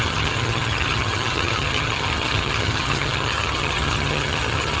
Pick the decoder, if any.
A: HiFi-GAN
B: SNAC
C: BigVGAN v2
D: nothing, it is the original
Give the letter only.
A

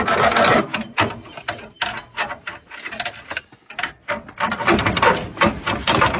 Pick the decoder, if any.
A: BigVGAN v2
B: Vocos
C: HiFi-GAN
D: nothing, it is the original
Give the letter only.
D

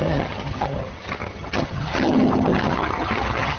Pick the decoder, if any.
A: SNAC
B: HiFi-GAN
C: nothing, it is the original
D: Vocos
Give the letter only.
B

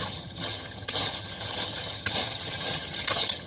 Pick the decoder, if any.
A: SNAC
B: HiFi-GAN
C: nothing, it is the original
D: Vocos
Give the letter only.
B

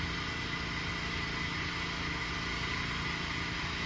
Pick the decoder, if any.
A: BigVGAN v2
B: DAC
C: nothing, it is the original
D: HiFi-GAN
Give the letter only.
C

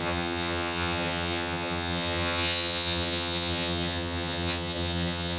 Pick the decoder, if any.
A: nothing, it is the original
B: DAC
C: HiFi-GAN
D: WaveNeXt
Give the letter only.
C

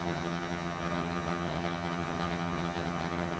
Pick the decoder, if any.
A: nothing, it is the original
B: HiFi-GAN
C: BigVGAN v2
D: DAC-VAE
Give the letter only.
B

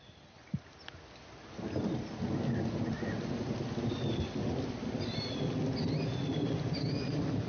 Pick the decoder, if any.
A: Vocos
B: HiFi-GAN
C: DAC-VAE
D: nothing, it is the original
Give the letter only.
D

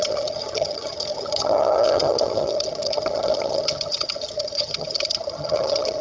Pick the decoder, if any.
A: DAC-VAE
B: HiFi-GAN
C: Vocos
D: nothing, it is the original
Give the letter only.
B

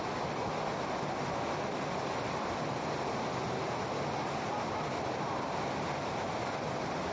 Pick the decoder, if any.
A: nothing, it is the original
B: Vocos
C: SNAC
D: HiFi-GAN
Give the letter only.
A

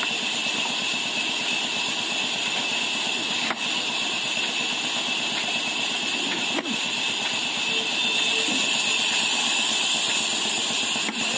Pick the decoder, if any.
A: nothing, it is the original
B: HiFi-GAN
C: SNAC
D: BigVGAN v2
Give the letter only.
A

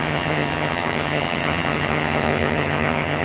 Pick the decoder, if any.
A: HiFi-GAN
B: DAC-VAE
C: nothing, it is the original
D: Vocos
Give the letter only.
A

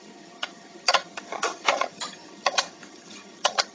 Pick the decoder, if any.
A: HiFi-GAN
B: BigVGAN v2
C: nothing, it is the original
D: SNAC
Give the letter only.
A